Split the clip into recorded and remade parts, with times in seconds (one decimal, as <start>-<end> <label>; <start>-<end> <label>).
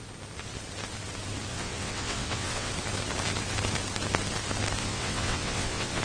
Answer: 0.0-1.5 recorded; 1.5-2.7 remade; 2.7-4.8 recorded; 4.8-6.0 remade